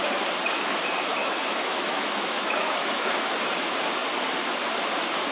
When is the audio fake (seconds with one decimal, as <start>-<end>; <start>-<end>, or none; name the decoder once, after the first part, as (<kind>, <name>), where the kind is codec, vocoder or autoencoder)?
1.2-3.4 (autoencoder, DAC-VAE)